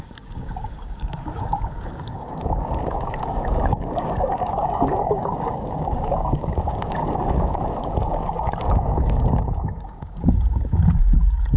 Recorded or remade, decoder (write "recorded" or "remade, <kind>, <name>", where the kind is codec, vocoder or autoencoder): remade, codec, DAC